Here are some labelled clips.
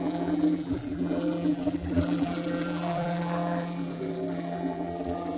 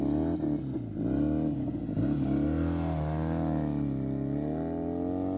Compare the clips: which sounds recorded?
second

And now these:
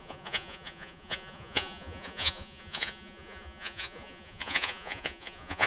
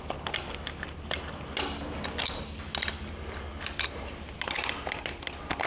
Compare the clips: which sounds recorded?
second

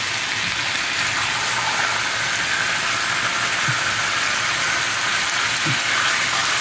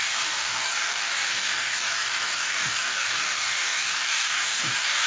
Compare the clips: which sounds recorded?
first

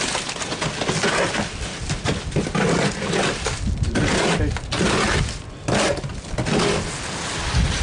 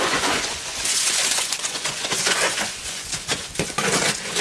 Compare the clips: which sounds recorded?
first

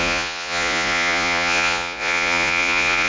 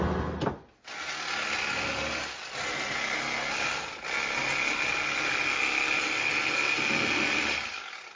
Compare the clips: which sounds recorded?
second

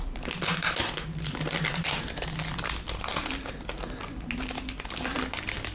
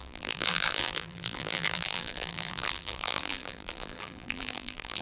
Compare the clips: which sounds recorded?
first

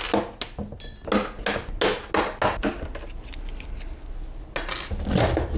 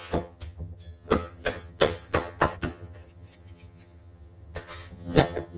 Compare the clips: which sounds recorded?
first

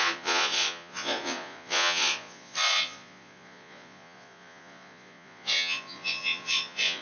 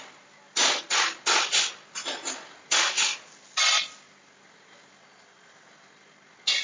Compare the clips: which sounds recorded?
second